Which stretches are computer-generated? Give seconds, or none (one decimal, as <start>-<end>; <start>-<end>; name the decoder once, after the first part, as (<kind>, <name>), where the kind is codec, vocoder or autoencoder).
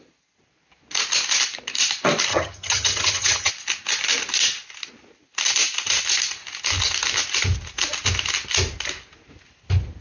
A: 2.3-3.5 (vocoder, HiFi-GAN)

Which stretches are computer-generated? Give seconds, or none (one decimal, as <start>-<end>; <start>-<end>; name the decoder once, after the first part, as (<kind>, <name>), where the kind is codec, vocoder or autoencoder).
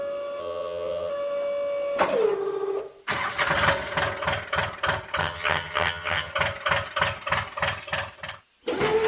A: 0.4-1.1 (vocoder, HiFi-GAN); 5.2-6.3